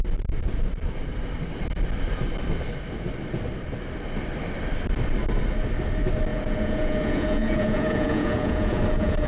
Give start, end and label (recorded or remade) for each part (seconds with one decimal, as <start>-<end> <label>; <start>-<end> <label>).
0.0-6.3 recorded; 6.3-9.3 remade